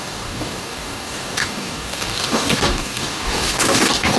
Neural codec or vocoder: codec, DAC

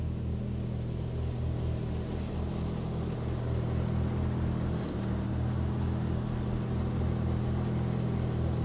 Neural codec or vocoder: none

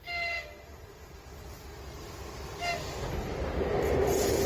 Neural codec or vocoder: none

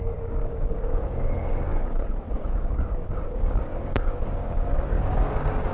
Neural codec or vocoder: codec, DAC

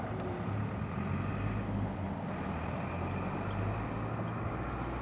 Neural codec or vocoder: none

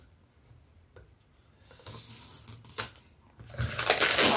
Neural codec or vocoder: none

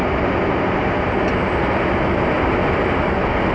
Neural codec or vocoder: none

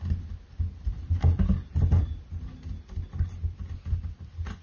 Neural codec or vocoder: none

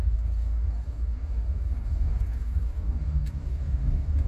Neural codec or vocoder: codec, DAC